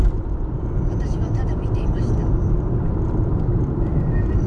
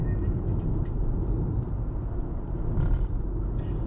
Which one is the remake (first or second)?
first